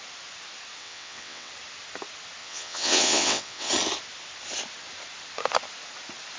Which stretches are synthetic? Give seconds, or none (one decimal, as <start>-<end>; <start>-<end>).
0.8-1.5; 2.4-3.7